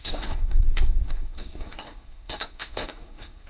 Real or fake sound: fake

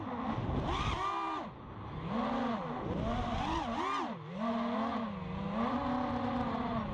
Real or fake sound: real